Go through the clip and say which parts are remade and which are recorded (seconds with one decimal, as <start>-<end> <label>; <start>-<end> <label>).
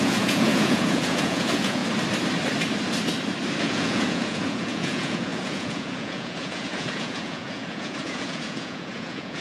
0.0-1.8 remade; 1.8-3.6 recorded; 3.6-9.4 remade